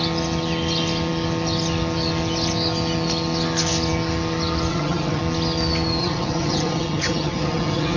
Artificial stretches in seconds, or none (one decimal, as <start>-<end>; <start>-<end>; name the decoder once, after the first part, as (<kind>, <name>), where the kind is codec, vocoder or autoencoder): 4.7-5.2 (vocoder, HiFi-GAN); 6.0-8.0